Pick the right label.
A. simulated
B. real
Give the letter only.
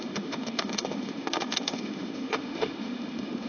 A